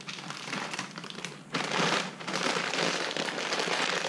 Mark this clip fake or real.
fake